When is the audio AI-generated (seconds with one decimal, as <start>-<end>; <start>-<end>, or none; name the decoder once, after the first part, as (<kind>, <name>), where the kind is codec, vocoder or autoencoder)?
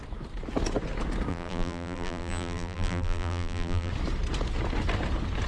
1.3-3.9 (vocoder, BigVGAN v2)